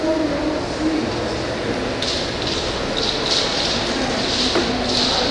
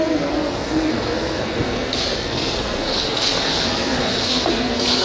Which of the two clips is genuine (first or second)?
first